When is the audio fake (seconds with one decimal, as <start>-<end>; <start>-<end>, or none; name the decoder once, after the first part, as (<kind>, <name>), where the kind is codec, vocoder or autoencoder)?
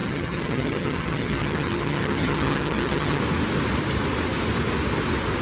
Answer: 0.0-3.2 (vocoder, HiFi-GAN)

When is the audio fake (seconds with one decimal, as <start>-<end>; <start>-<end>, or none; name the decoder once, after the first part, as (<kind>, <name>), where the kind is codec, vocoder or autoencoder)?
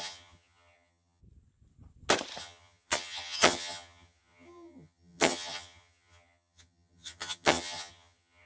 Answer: 0.0-1.2 (vocoder, HiFi-GAN); 2.4-8.5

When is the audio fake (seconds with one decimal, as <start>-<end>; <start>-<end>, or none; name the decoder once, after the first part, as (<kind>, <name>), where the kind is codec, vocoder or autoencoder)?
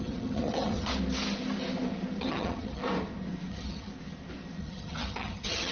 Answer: 0.0-0.9 (vocoder, HiFi-GAN); 2.2-2.8; 3.5-3.9; 4.6-5.7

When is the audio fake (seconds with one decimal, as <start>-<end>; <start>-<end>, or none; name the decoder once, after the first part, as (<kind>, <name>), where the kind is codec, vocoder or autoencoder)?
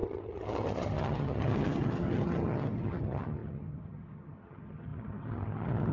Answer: 0.0-5.9 (vocoder, HiFi-GAN)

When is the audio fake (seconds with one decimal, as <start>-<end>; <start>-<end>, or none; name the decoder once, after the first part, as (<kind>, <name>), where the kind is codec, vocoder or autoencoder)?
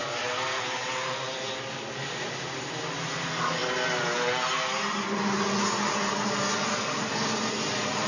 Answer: none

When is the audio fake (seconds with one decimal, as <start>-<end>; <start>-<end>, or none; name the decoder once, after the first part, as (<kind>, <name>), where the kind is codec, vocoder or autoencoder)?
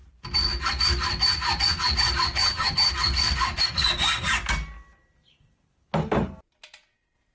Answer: 2.4-2.9 (vocoder, HiFi-GAN)